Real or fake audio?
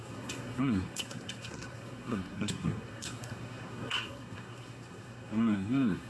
fake